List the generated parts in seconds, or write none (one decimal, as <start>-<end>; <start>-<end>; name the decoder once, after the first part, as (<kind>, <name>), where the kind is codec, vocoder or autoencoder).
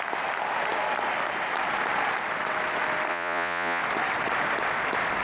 3.1-3.8 (vocoder, Vocos)